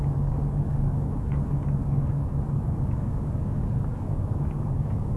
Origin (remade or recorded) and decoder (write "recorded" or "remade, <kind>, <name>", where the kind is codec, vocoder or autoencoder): remade, codec, DAC